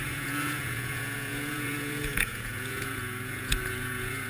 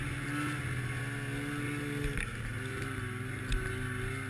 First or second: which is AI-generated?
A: first